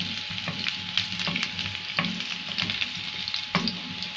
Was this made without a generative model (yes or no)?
yes